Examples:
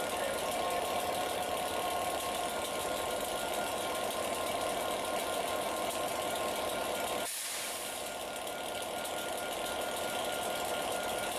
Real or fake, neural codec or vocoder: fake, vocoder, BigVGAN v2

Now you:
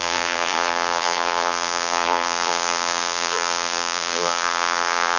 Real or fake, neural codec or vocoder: fake, vocoder, BigVGAN v2